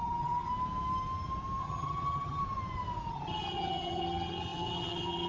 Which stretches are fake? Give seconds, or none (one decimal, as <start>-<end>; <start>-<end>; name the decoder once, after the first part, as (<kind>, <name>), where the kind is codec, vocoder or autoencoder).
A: 0.0-0.5 (vocoder, HiFi-GAN); 1.6-2.4; 3.1-5.3